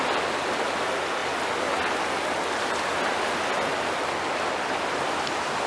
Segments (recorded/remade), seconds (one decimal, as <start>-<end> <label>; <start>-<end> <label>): 0.0-5.7 recorded